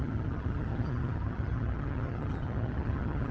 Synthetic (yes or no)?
yes